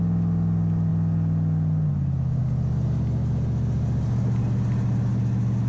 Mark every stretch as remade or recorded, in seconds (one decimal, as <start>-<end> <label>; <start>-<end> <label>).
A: 0.0-5.7 recorded